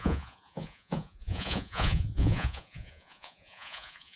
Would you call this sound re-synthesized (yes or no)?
yes